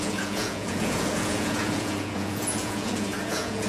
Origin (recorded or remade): remade